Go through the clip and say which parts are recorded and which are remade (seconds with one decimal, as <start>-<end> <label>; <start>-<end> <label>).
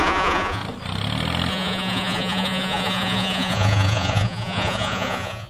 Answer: 0.0-0.6 remade; 0.6-1.5 recorded; 1.5-5.5 remade